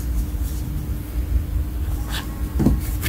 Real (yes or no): no